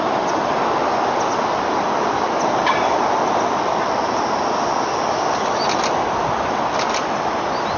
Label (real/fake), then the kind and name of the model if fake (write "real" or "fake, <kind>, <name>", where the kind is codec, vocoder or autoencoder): real